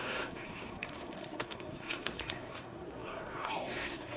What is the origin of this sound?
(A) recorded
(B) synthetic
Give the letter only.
B